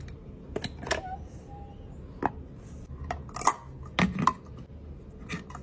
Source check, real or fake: real